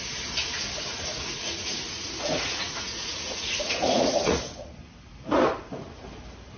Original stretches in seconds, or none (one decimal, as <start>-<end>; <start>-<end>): 0.0-0.9; 4.4-6.6